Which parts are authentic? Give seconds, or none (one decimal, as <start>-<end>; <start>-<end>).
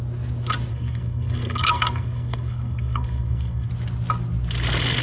0.0-0.7; 3.7-5.0